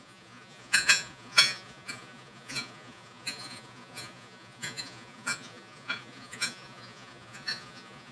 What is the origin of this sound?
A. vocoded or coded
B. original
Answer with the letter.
A